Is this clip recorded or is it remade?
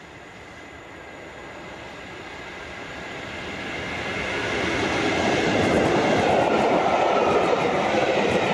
recorded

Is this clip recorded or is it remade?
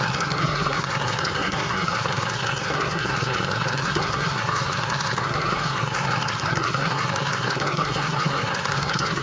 remade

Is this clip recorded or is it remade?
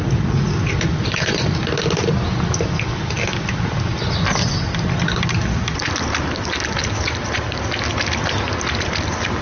recorded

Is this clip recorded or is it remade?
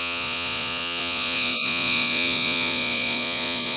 remade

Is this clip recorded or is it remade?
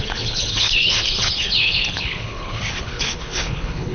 remade